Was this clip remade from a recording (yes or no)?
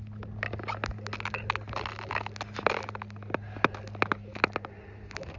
no